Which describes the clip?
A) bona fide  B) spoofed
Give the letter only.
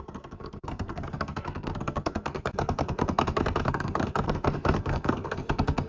B